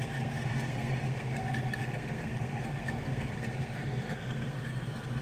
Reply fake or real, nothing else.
fake